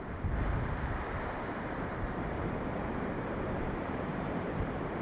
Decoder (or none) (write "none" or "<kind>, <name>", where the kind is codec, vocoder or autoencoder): vocoder, BigVGAN v2